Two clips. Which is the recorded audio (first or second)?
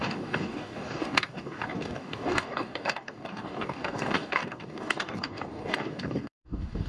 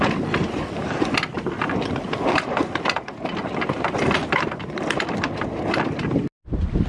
second